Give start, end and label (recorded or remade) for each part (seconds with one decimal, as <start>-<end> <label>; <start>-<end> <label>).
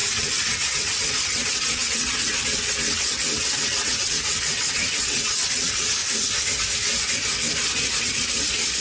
0.0-6.0 remade; 6.0-8.0 recorded; 8.0-8.8 remade